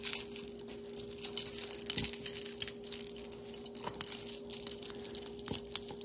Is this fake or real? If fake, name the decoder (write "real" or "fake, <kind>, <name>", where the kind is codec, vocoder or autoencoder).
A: real